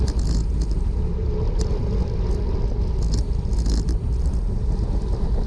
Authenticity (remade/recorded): recorded